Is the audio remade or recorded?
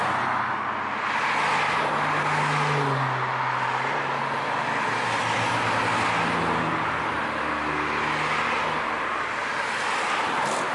recorded